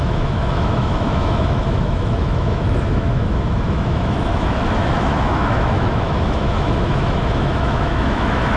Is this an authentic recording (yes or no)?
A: no